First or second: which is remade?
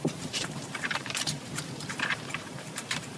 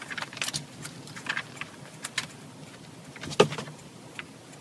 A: first